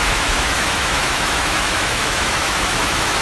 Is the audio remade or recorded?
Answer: remade